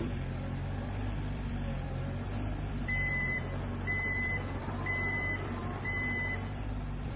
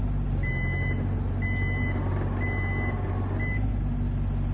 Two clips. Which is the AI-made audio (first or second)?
first